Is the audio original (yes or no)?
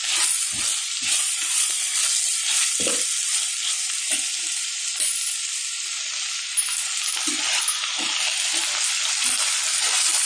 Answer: yes